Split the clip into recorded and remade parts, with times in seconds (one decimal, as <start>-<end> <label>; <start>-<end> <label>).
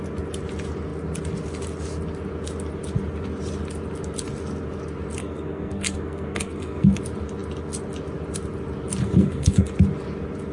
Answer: 0.0-5.2 recorded; 5.2-7.0 remade; 7.0-9.0 recorded; 9.0-9.7 remade; 9.7-10.5 recorded